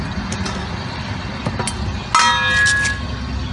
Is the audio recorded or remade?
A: recorded